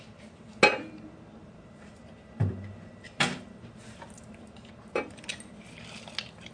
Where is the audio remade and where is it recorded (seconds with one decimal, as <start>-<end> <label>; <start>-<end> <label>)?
0.0-1.4 recorded; 1.4-5.3 remade; 5.3-6.5 recorded